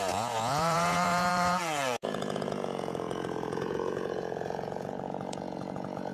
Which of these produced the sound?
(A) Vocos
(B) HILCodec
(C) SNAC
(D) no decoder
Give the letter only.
A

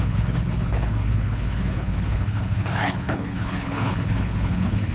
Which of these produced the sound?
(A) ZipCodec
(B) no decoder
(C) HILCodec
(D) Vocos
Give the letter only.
C